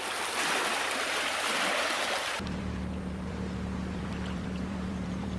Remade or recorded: remade